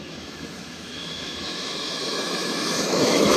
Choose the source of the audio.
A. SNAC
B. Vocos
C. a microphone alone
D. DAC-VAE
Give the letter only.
D